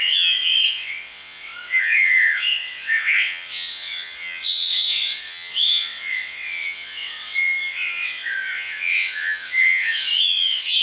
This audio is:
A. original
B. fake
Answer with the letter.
B